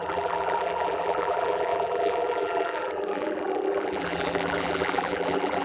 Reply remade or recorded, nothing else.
remade